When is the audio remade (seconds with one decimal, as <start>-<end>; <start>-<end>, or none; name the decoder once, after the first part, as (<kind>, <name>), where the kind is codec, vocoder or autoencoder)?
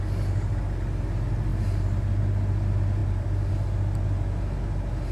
1.5-2.2 (vocoder, BigVGAN v2); 3.0-3.5